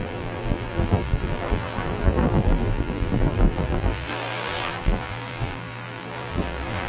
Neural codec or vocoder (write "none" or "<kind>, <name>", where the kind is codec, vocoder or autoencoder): vocoder, BigVGAN v2